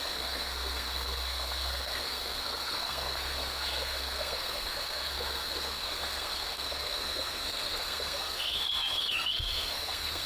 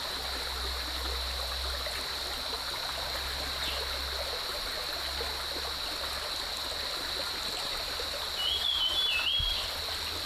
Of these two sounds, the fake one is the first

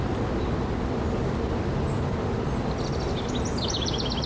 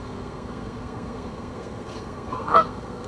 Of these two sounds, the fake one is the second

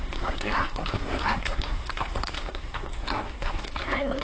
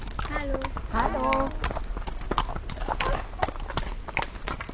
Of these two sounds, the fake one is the first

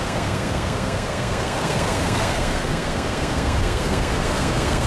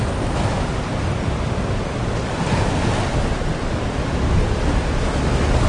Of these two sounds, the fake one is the first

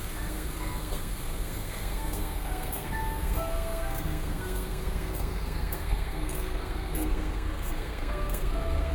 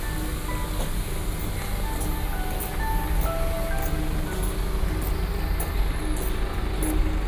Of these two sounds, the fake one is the first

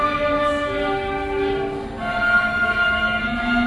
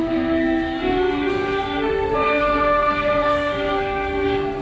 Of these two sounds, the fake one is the second